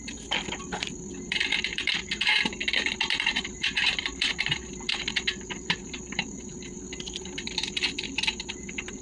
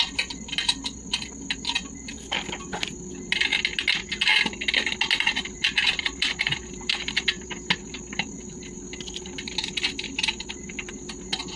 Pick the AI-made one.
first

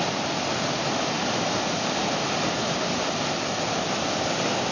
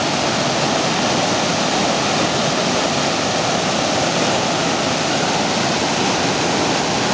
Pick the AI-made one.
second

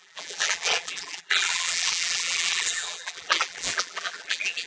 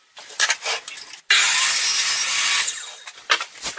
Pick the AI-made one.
first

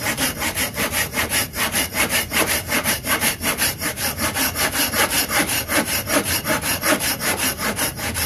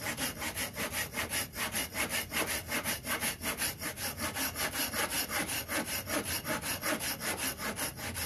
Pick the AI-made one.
first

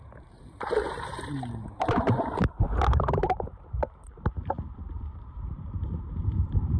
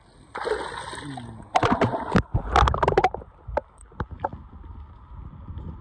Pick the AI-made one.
first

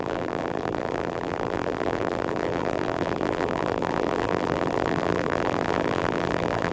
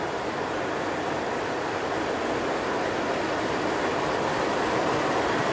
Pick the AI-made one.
first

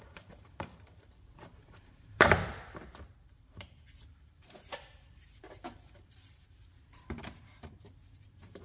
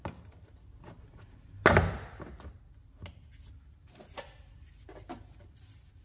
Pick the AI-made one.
first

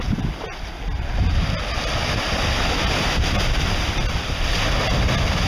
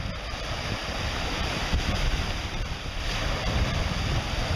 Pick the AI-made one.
second